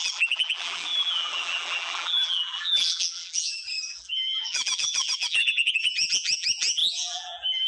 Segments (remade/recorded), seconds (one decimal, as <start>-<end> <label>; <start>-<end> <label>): 0.0-7.7 remade